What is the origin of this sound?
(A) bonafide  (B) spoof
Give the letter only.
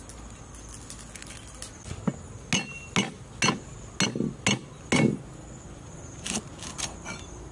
A